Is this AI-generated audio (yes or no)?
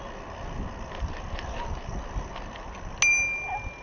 no